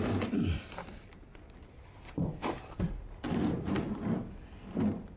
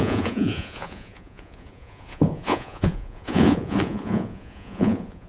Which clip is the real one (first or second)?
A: first